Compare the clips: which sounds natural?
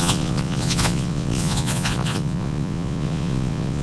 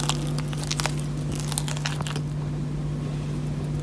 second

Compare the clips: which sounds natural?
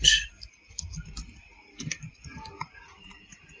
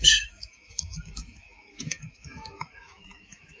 first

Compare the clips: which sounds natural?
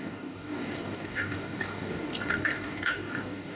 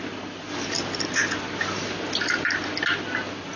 second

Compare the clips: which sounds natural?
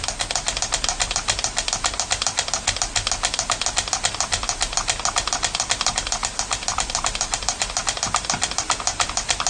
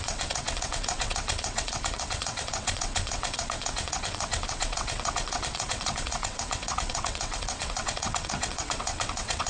first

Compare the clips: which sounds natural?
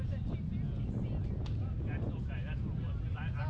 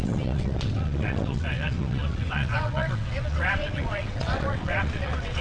first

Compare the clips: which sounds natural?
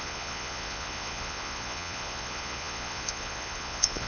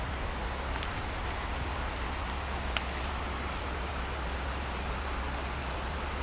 second